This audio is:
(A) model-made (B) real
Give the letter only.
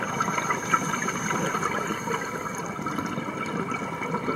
B